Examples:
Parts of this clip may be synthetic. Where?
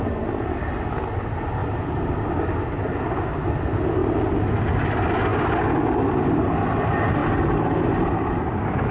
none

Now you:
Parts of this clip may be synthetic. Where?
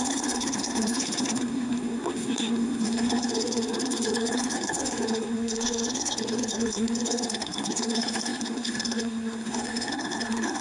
0.0-10.6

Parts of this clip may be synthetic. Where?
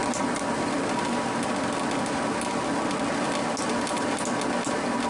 none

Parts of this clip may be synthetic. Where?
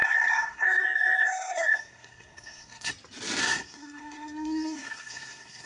0.0-2.9; 3.4-5.7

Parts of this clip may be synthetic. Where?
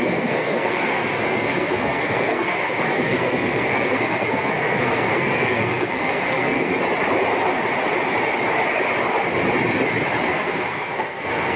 0.0-6.7; 10.3-11.6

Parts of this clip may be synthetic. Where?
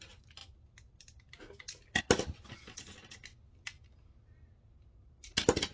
none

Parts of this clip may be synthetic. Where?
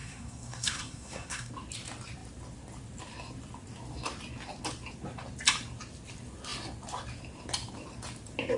0.0-1.5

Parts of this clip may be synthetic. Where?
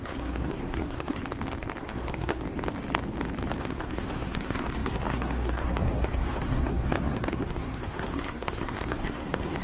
0.0-1.2; 1.8-2.4; 3.6-9.6